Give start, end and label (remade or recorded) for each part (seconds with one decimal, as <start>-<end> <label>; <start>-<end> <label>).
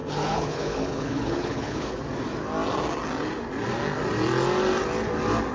0.0-2.0 remade; 2.0-5.5 recorded